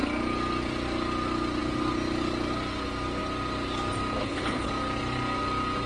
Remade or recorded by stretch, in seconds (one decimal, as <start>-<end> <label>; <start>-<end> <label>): 0.0-4.2 recorded; 4.2-4.7 remade; 4.7-5.9 recorded